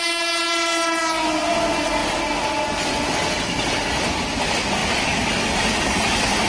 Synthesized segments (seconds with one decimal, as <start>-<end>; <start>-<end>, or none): none